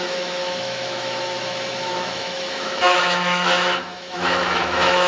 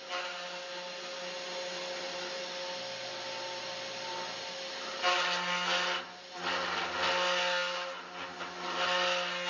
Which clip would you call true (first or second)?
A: second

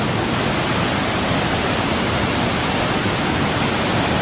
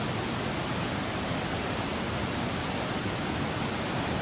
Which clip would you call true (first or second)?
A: first